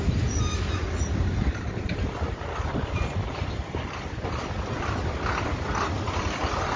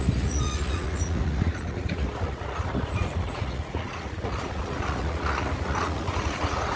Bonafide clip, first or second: first